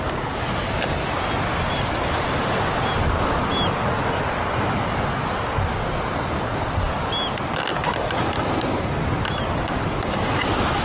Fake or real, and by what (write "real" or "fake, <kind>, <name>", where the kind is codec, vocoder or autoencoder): real